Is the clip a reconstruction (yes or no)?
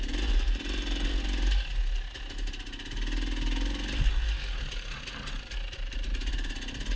no